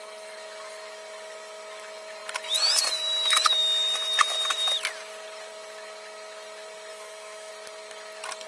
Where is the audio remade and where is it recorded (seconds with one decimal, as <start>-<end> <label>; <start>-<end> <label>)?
0.0-6.9 recorded; 6.9-7.5 remade; 7.5-8.5 recorded